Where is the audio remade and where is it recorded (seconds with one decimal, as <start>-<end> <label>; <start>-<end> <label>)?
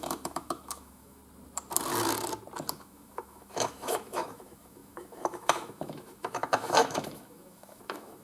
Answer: 0.0-1.2 remade; 1.2-2.7 recorded; 2.7-8.2 remade